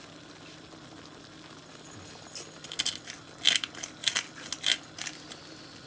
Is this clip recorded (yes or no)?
yes